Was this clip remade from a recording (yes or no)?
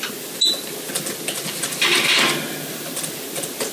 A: no